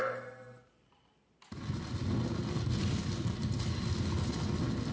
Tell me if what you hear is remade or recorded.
recorded